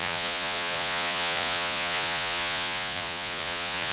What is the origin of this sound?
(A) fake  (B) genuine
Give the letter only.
A